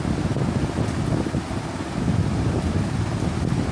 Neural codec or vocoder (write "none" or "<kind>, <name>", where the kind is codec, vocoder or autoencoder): none